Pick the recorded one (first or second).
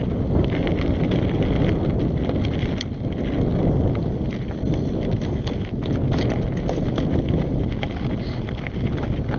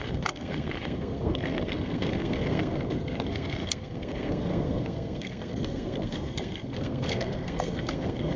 first